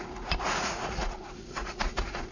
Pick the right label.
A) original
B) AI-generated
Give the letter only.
B